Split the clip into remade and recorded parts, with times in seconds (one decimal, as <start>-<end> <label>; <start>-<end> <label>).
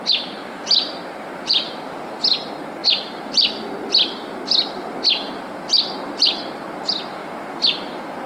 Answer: 0.0-8.3 recorded